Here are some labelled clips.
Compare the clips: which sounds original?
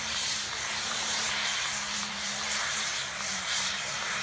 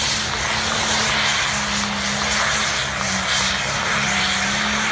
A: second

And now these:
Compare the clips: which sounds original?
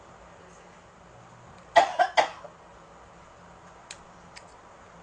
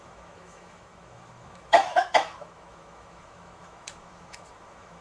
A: first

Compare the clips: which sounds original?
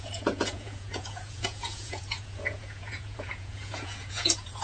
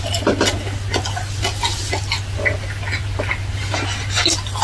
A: second